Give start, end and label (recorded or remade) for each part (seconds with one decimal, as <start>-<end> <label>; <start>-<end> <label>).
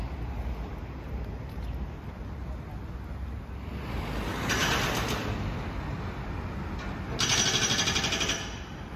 0.0-4.6 recorded; 4.6-5.3 remade; 5.3-9.0 recorded